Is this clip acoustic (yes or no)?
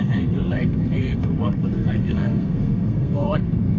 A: no